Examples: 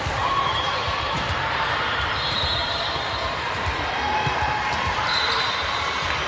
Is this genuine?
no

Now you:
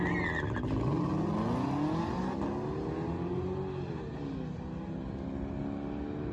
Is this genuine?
yes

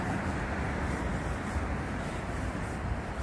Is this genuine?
no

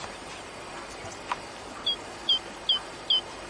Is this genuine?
yes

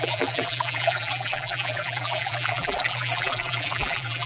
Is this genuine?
no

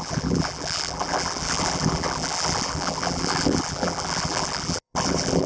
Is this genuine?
no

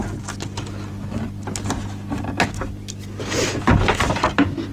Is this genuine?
yes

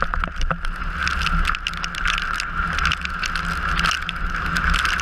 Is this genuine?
yes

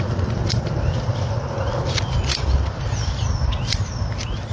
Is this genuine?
yes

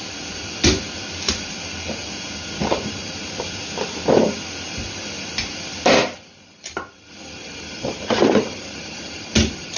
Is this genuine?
yes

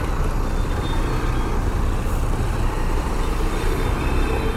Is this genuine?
no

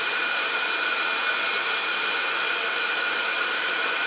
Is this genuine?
no